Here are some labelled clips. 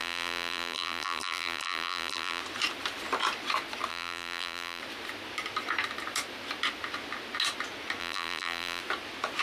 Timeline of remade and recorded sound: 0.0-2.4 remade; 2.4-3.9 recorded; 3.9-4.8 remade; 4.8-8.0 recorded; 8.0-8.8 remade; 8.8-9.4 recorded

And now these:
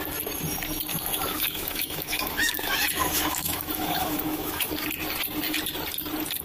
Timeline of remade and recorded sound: 0.0-0.9 recorded; 0.9-4.7 remade; 4.7-6.4 recorded

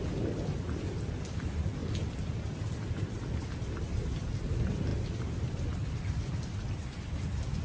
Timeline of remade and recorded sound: 0.0-1.8 remade; 1.8-3.0 recorded; 3.0-7.6 remade

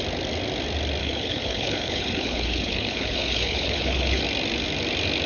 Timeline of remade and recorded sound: 0.0-1.0 recorded; 1.0-4.2 remade; 4.2-5.3 recorded

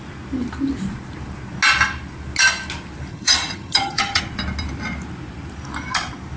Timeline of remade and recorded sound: 0.0-3.1 recorded; 3.1-4.2 remade; 4.2-6.4 recorded

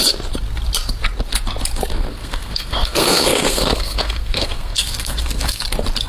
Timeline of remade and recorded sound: 0.0-1.9 recorded; 1.9-5.6 remade; 5.6-6.1 recorded

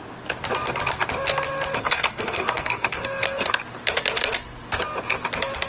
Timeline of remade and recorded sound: 0.0-1.8 recorded; 1.8-3.5 remade; 3.5-5.7 recorded

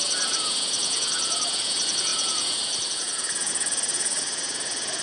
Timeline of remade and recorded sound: 0.0-5.0 remade